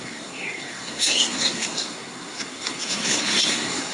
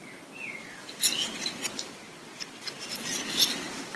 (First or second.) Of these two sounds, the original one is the second